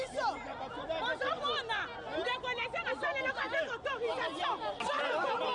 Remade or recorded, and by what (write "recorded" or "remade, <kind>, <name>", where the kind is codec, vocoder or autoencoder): recorded